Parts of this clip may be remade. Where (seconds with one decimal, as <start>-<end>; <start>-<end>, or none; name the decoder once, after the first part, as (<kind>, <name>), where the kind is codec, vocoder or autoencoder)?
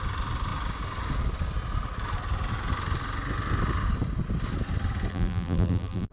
5.1-6.1 (vocoder, BigVGAN v2)